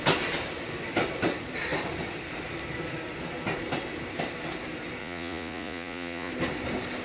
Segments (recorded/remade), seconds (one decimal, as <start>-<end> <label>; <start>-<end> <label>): 0.0-5.0 recorded; 5.0-6.3 remade; 6.3-7.0 recorded